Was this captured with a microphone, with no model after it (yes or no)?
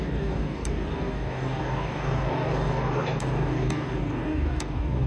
no